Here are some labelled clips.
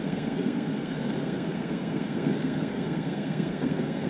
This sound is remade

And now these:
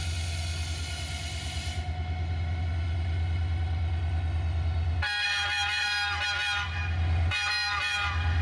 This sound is recorded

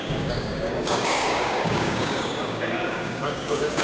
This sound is remade